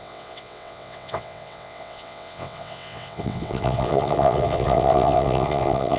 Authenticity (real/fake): fake